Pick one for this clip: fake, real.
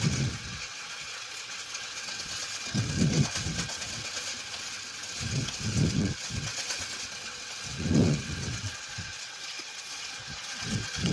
fake